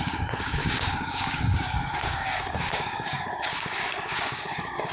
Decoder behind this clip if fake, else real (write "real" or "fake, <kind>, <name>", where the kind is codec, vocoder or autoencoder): fake, codec, DAC